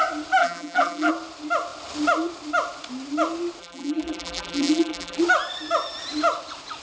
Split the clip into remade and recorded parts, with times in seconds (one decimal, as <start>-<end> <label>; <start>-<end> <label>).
0.0-0.4 recorded; 0.4-1.1 remade; 1.1-3.6 recorded; 3.6-5.2 remade; 5.2-6.8 recorded